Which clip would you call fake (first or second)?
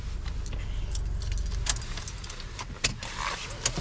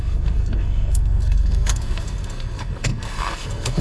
second